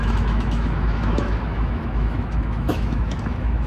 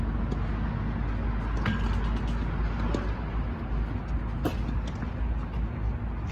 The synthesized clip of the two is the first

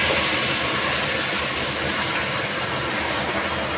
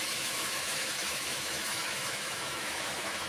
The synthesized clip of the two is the second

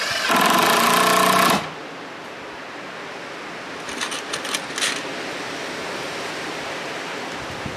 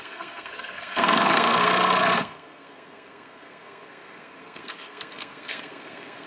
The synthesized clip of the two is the second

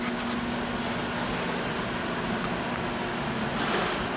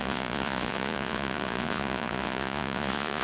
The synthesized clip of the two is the second